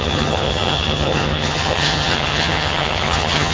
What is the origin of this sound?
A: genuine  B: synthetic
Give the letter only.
B